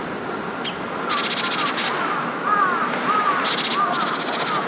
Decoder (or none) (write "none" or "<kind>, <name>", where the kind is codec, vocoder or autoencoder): none